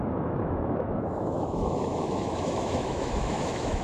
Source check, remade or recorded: remade